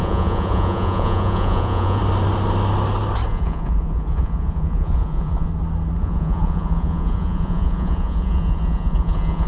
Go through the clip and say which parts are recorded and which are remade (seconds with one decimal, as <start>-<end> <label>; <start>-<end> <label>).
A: 0.0-2.0 remade; 2.0-3.3 recorded; 3.3-5.5 remade; 5.5-6.0 recorded; 6.0-9.5 remade

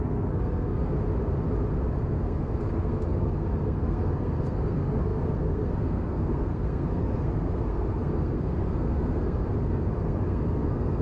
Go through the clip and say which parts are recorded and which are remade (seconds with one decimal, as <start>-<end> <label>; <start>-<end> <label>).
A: 0.0-0.9 remade; 0.9-2.0 recorded; 2.0-11.0 remade

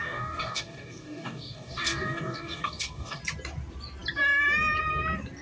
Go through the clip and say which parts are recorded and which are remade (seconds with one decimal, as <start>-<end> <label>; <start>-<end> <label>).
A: 0.0-3.2 remade; 3.2-5.4 recorded

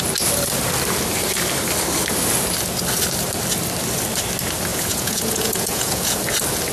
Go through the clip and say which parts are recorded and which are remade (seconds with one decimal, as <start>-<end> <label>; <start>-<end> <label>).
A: 0.0-4.7 recorded; 4.7-6.2 remade; 6.2-6.7 recorded

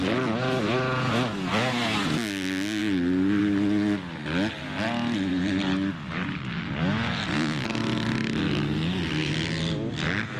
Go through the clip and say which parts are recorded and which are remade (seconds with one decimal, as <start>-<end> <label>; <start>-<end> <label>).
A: 0.0-10.4 recorded